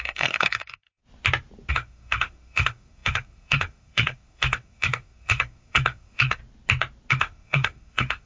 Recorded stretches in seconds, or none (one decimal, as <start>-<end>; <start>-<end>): 1.0-1.7; 6.4-7.1